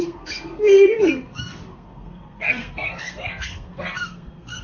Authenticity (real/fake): fake